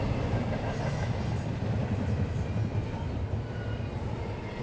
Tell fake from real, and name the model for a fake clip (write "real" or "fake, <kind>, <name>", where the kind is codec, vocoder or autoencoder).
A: real